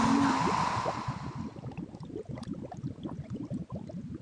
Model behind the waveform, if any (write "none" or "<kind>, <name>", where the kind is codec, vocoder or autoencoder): none